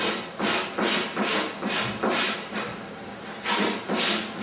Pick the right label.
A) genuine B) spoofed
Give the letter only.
A